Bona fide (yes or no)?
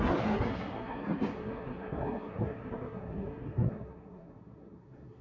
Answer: no